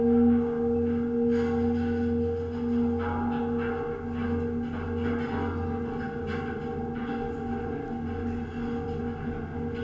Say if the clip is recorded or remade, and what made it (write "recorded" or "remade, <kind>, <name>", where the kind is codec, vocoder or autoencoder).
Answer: recorded